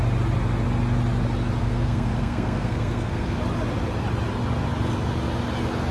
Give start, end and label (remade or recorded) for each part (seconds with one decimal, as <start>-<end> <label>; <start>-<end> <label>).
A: 0.0-1.6 recorded; 1.6-3.4 remade; 3.4-5.9 recorded